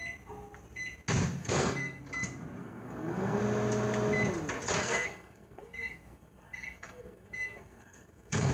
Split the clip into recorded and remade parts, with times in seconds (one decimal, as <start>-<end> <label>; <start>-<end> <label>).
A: 0.0-1.4 recorded; 1.4-2.0 remade; 2.0-2.6 recorded; 2.6-3.4 remade; 3.4-4.8 recorded; 4.8-8.5 remade